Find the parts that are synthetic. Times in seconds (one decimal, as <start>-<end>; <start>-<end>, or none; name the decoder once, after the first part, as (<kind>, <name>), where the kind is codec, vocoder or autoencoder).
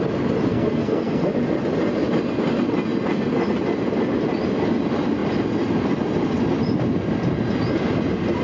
0.5-1.3 (codec, SNAC)